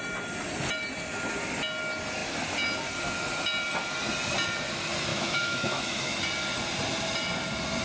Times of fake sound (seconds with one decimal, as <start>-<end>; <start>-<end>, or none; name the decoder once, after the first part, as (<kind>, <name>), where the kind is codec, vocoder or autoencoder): 5.1-6.2 (autoencoder, DAC-VAE)